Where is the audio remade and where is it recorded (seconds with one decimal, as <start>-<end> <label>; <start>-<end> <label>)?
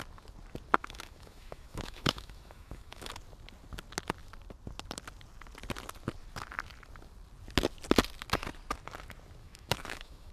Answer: 0.0-0.8 recorded; 0.8-3.1 remade; 3.1-9.4 recorded; 9.4-10.3 remade